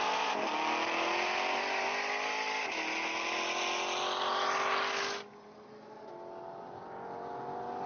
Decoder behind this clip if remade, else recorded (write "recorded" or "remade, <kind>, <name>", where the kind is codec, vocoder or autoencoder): recorded